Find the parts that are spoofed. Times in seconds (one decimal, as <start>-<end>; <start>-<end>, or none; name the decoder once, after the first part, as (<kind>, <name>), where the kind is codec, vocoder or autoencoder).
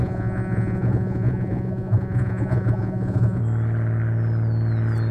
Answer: 0.0-3.4 (vocoder, Vocos)